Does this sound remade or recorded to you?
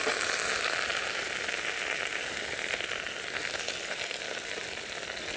recorded